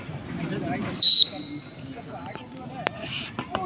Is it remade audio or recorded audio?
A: remade